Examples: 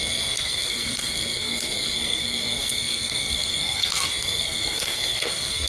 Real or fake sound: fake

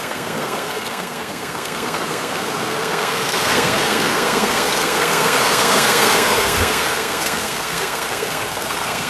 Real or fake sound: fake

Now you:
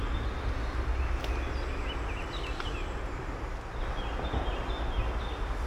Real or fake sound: real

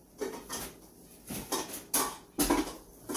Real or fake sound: real